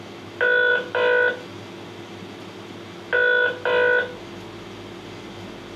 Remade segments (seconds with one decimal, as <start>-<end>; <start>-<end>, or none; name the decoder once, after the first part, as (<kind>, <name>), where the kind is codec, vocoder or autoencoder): none